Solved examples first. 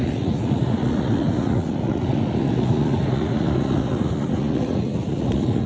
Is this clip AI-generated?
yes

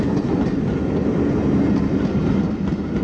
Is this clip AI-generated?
no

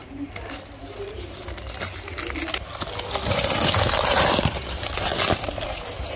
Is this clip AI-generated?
no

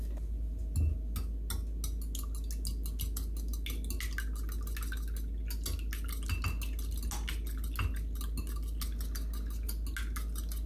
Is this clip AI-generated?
no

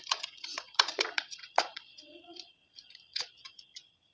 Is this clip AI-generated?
yes